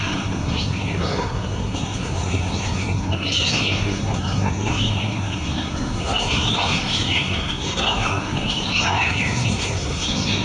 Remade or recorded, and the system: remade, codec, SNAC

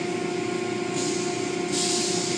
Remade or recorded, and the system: recorded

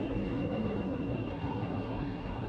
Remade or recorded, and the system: remade, codec, SNAC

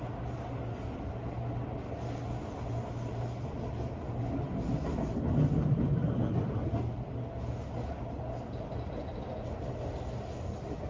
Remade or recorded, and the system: recorded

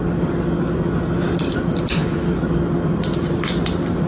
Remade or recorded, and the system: recorded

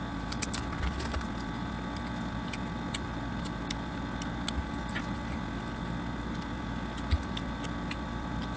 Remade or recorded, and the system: recorded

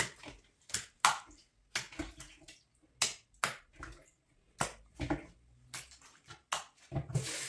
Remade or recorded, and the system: recorded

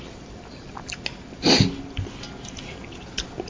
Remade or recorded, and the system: recorded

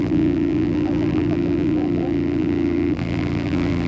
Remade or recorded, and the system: remade, vocoder, BigVGAN v2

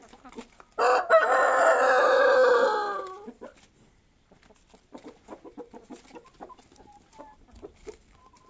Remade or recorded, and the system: recorded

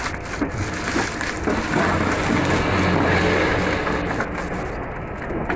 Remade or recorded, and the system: recorded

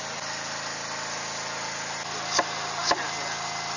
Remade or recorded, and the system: recorded